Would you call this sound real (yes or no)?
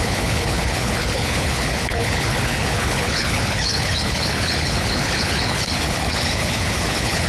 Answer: no